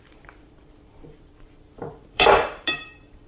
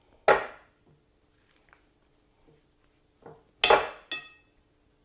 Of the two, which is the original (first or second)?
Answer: second